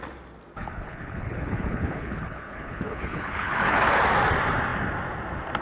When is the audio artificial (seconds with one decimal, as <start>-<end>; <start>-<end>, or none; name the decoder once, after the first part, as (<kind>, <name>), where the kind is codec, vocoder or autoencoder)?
0.5-3.9 (codec, HILCodec)